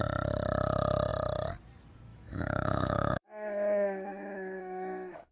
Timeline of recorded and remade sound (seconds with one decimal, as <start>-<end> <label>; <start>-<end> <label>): 0.0-2.1 recorded; 2.1-5.3 remade